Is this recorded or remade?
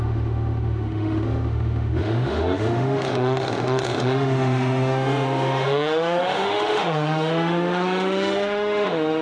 remade